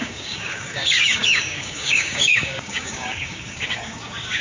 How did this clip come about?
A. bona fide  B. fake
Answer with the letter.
B